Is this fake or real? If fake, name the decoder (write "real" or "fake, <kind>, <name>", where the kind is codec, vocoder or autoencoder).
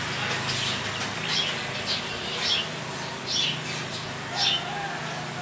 real